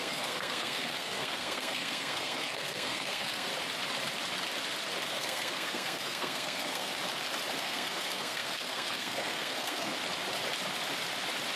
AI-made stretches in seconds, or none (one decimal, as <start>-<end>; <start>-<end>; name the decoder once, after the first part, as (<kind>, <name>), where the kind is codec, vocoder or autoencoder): 0.0-3.5 (codec, SNAC); 5.1-6.9; 7.6-9.9